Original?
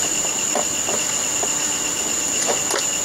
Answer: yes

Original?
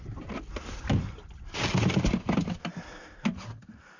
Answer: yes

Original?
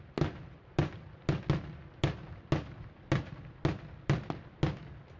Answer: yes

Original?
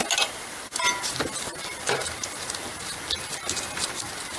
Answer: yes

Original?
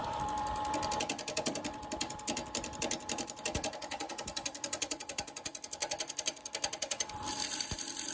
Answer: no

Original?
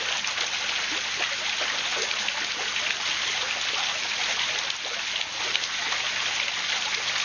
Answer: yes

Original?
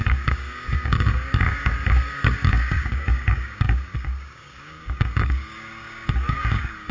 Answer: no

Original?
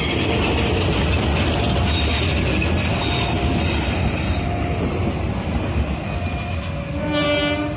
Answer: yes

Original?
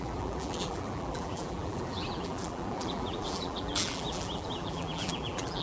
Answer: no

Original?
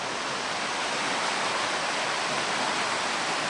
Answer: yes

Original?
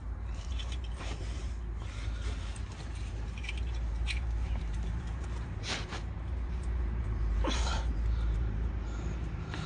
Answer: no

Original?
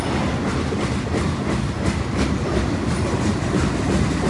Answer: yes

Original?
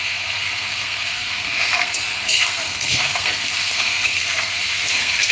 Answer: no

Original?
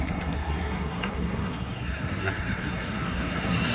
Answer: no